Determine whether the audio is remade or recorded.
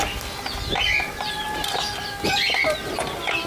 recorded